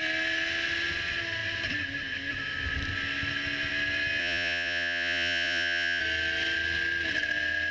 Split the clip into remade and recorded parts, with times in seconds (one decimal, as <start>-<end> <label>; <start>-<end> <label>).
0.0-4.2 recorded; 4.2-6.0 remade; 6.0-7.7 recorded